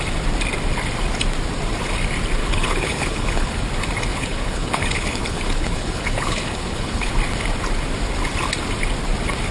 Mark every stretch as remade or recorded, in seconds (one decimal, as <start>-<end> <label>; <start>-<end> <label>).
0.0-2.4 recorded; 2.4-3.6 remade; 3.6-4.1 recorded; 4.1-7.1 remade; 7.1-9.5 recorded